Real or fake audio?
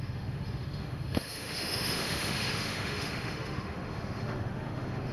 fake